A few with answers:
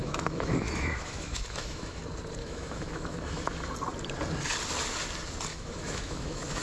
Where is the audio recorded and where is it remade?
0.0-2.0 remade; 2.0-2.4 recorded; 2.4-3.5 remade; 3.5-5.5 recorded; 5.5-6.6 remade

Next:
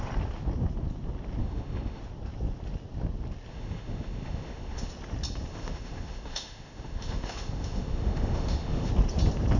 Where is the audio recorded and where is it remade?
0.0-1.4 recorded; 1.4-2.0 remade; 2.0-3.5 recorded; 3.5-4.9 remade; 4.9-5.5 recorded; 5.5-8.9 remade; 8.9-9.6 recorded

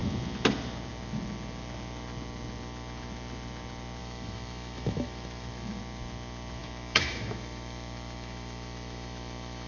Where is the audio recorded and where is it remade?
0.0-4.0 recorded; 4.0-5.8 remade; 5.8-6.6 recorded; 6.6-9.7 remade